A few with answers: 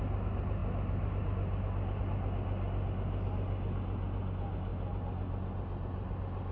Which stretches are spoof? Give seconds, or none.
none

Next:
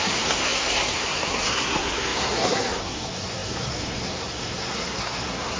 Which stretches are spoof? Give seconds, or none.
0.0-5.6 (codec, SNAC)

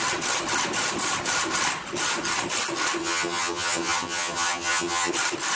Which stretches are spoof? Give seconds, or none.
3.0-5.1 (vocoder, HiFi-GAN)

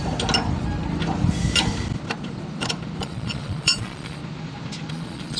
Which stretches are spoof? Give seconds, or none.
3.0-4.2 (vocoder, Vocos); 4.9-5.4

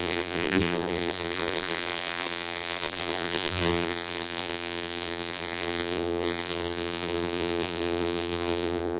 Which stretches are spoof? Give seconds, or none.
0.0-9.0 (vocoder, BigVGAN v2)

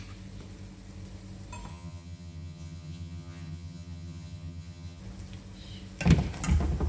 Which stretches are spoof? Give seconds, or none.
1.7-5.0 (vocoder, HiFi-GAN)

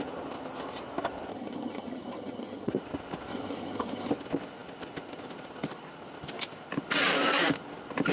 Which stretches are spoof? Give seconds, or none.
1.3-2.7 (vocoder, HiFi-GAN); 3.3-4.1